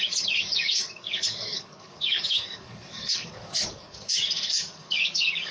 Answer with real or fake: fake